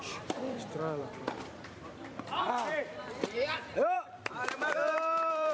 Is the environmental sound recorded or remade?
remade